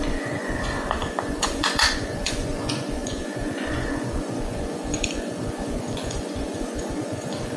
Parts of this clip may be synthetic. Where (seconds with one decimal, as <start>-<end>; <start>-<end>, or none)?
0.0-7.6